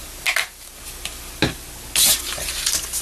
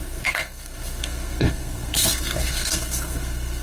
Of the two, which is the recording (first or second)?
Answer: first